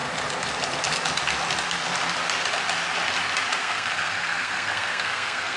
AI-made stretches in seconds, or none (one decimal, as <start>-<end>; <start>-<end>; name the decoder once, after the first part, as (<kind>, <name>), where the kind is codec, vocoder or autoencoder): 3.6-5.6 (codec, SNAC)